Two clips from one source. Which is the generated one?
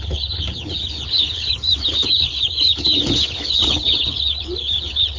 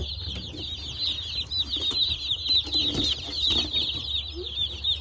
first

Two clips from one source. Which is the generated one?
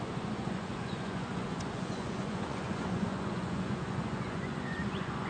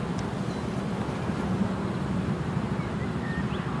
first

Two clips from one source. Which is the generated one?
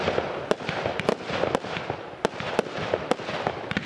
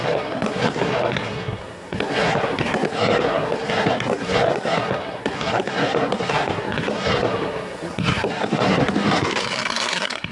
second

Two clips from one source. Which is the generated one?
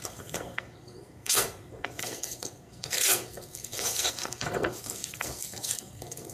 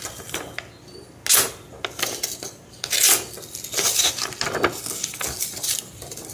first